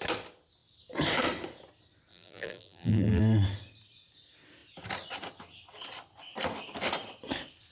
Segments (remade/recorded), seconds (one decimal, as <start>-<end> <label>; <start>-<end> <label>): 0.0-2.1 recorded; 2.1-3.2 remade; 3.2-7.7 recorded